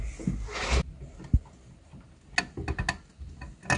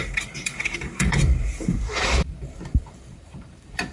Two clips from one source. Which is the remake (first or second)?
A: second